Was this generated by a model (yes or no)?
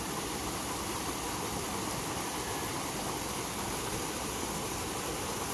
no